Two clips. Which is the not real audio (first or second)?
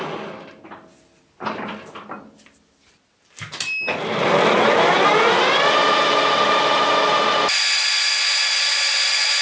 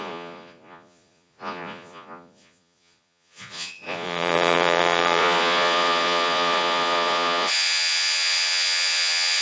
second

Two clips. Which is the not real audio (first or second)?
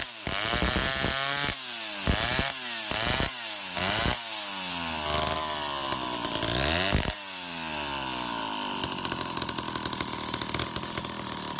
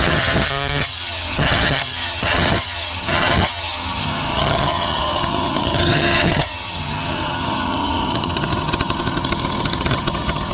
second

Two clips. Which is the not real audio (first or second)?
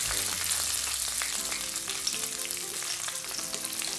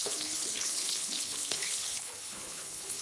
second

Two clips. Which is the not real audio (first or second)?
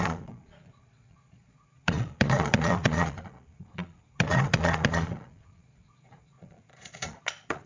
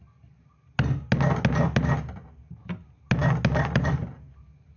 first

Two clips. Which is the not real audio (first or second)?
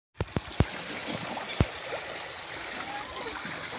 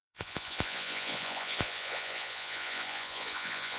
second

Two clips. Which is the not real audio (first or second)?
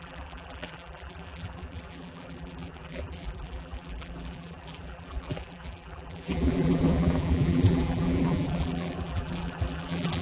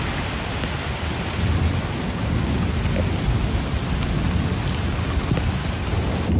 first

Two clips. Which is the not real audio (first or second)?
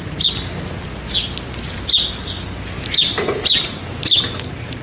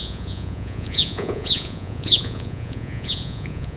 second